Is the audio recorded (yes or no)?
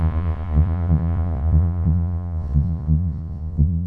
no